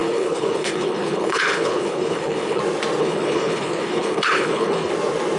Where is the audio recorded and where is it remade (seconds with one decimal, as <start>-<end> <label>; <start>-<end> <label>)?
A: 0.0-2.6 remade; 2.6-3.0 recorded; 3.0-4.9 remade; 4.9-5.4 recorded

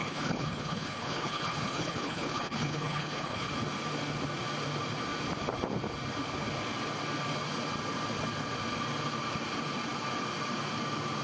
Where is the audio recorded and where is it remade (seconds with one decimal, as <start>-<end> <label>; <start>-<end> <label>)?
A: 0.0-3.5 remade; 3.5-11.2 recorded

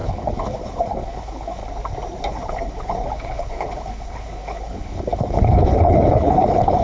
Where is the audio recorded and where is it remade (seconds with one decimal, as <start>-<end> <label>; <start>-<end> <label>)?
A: 0.0-1.6 remade; 1.6-2.3 recorded; 2.3-6.8 remade

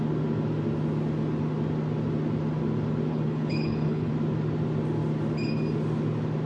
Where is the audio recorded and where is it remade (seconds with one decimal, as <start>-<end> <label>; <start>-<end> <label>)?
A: 0.0-3.1 recorded; 3.1-4.1 remade; 4.1-6.5 recorded